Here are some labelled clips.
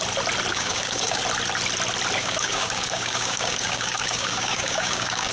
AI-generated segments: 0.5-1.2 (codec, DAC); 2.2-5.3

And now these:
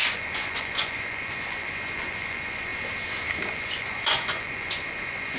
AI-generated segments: 0.0-2.7 (vocoder, Vocos); 3.5-5.4

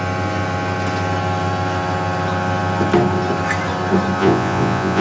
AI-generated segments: 4.2-5.0 (vocoder, Vocos)

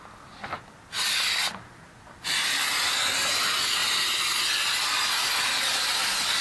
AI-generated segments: none